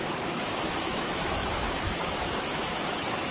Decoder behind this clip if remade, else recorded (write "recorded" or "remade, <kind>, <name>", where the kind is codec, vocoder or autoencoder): remade, autoencoder, DAC-VAE